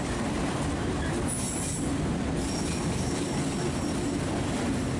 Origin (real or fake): real